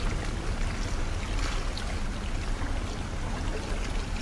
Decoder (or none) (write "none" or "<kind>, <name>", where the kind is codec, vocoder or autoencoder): none